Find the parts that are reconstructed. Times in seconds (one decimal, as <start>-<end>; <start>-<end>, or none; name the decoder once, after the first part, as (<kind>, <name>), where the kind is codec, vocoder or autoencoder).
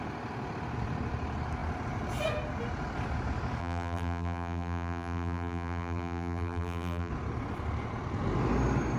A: 3.6-7.1 (vocoder, BigVGAN v2)